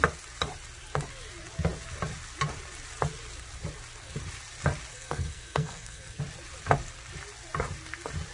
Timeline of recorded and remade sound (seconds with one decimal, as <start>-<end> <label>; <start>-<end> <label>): 0.0-4.9 recorded; 4.9-6.2 remade; 6.2-8.3 recorded